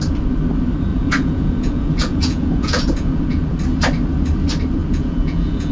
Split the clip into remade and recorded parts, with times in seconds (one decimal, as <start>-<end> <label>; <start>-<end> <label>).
0.0-0.9 recorded; 0.9-3.5 remade; 3.5-4.8 recorded; 4.8-5.7 remade